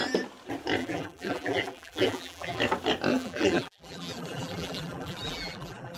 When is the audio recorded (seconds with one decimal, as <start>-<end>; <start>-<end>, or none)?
0.0-0.8; 2.6-3.1